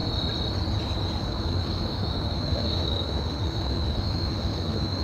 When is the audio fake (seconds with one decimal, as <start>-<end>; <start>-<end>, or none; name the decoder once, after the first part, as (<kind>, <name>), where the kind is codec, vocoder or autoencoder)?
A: 1.2-5.0 (autoencoder, DAC-VAE)